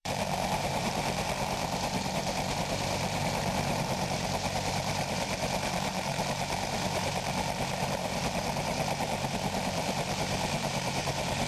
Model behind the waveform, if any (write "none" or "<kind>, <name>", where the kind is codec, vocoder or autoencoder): vocoder, BigVGAN v2